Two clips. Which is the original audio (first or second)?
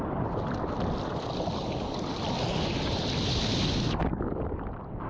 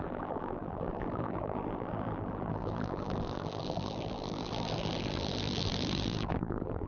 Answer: first